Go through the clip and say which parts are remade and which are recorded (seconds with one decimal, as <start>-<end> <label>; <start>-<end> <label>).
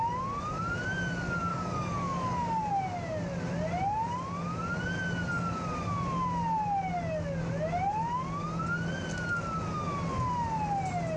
0.0-1.5 recorded; 1.5-2.7 remade; 2.7-11.2 recorded